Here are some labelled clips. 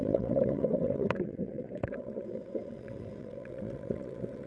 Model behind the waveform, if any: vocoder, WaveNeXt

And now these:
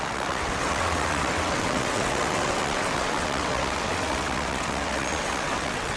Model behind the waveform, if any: vocoder, WaveNeXt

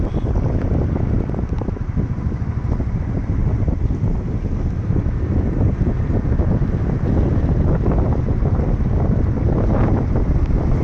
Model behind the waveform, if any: none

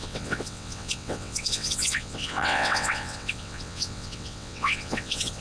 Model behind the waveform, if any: vocoder, WaveNeXt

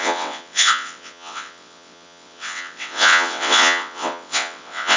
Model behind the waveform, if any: vocoder, WaveNeXt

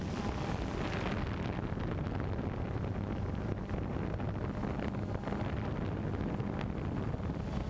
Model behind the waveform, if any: none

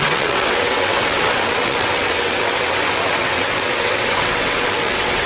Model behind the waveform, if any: vocoder, WaveNeXt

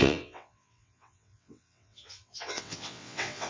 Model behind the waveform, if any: vocoder, WaveNeXt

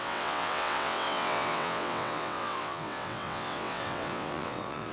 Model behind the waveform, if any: vocoder, WaveNeXt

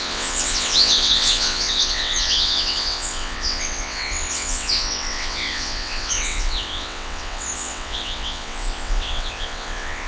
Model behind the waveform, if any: vocoder, WaveNeXt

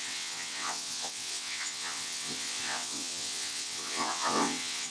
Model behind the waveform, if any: vocoder, WaveNeXt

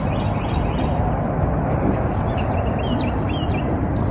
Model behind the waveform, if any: none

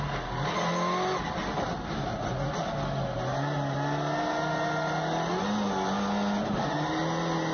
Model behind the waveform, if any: none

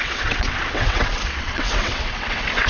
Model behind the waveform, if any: vocoder, WaveNeXt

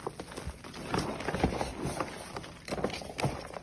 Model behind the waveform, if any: none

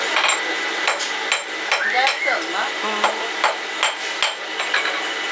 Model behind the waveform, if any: none